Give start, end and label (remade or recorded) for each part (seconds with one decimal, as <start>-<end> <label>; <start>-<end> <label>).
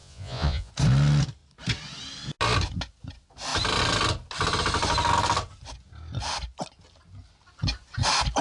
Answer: 0.0-0.7 remade; 0.7-8.4 recorded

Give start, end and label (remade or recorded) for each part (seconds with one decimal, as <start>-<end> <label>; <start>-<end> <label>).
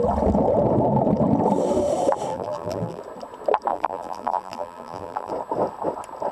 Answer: 0.0-2.3 recorded; 2.3-3.0 remade; 3.0-3.7 recorded; 3.7-5.3 remade; 5.3-6.3 recorded